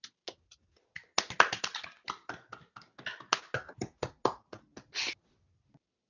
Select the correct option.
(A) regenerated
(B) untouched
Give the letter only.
B